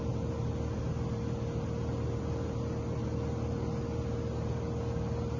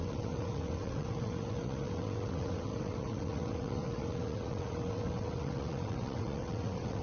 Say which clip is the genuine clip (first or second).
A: first